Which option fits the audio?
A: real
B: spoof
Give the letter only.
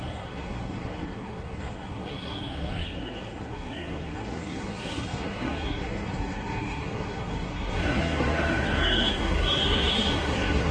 B